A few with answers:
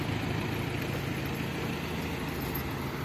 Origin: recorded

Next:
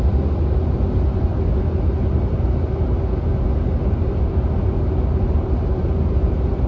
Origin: recorded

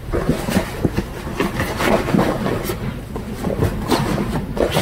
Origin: recorded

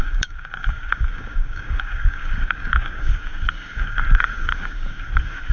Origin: remade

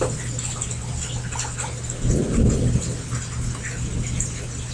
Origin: recorded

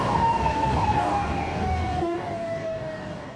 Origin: remade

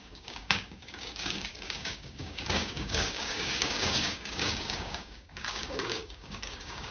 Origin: remade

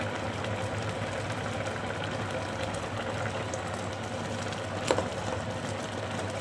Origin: recorded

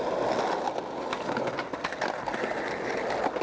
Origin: recorded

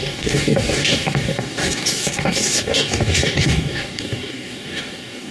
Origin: remade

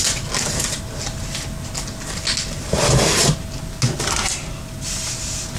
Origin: recorded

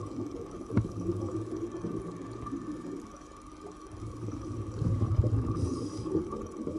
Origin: remade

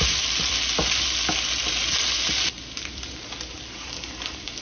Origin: recorded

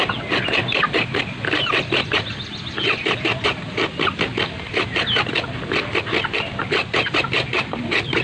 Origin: recorded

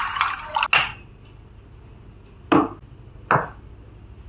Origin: recorded